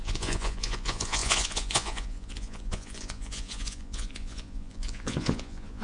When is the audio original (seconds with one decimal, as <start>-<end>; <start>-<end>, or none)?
none